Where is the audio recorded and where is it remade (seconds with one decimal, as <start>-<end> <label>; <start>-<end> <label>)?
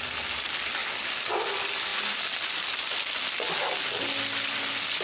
0.0-5.0 recorded